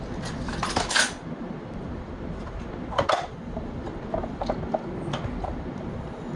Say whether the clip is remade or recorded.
recorded